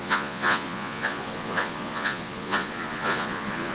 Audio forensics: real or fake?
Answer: fake